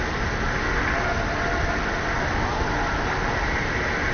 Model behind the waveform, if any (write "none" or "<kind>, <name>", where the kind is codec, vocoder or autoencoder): none